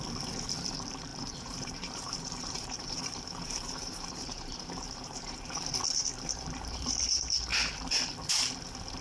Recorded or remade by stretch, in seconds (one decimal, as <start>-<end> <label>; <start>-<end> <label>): 0.0-1.1 recorded; 1.1-5.5 remade; 5.5-6.1 recorded; 6.1-6.9 remade; 6.9-9.0 recorded